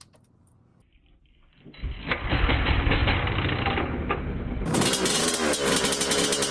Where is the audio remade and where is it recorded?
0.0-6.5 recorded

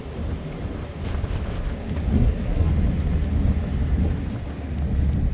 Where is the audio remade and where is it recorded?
0.0-2.1 recorded; 2.1-2.7 remade; 2.7-5.3 recorded

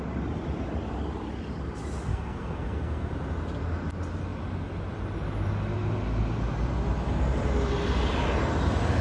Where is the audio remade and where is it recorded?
0.0-2.1 recorded; 2.1-3.1 remade; 3.1-9.0 recorded

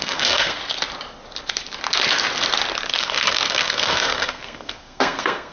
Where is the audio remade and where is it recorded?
0.0-0.6 remade; 0.6-3.0 recorded; 3.0-5.5 remade

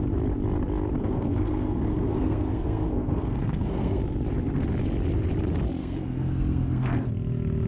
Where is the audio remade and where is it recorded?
0.0-1.0 recorded; 1.0-4.0 remade; 4.0-5.8 recorded; 5.8-7.1 remade; 7.1-7.7 recorded

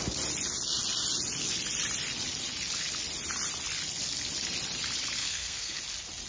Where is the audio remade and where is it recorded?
0.0-5.2 recorded; 5.2-5.8 remade; 5.8-6.3 recorded

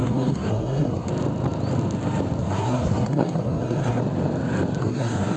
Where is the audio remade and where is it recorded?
0.0-1.1 remade; 1.1-2.4 recorded; 2.4-4.0 remade; 4.0-4.8 recorded; 4.8-5.4 remade